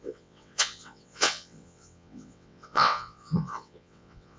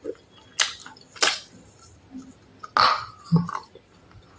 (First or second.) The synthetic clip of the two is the first